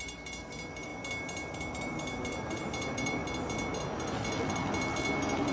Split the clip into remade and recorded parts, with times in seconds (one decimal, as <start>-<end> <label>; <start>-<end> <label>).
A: 0.0-0.9 remade; 0.9-1.7 recorded; 1.7-3.2 remade; 3.2-5.5 recorded